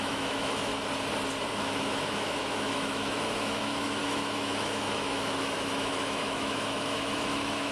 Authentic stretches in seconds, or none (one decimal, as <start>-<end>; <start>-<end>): 0.7-1.5